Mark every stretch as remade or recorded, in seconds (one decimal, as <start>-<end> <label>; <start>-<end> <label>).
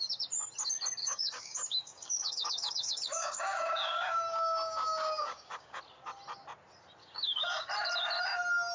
0.0-1.0 recorded; 1.0-5.8 remade; 5.8-7.0 recorded; 7.0-7.7 remade; 7.7-8.7 recorded